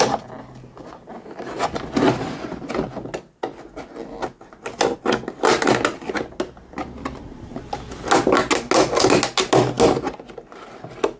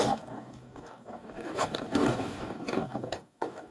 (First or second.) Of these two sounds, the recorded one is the first